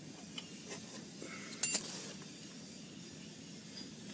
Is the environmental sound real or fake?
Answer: real